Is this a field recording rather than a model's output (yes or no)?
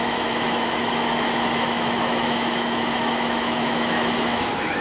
no